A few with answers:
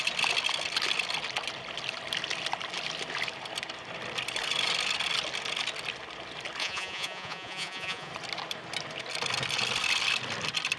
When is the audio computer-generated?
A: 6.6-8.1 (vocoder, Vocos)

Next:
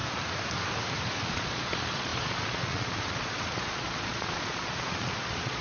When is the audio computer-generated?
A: 1.3-5.6 (vocoder, Vocos)

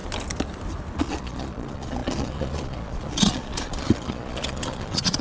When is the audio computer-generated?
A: 1.0-5.2 (vocoder, Vocos)

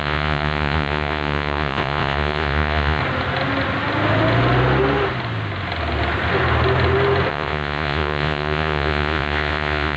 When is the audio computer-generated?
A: 0.0-3.0 (vocoder, Vocos); 7.3-10.0

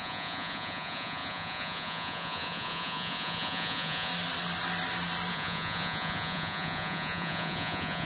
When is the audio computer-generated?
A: 0.0-4.1 (vocoder, Vocos); 5.3-8.0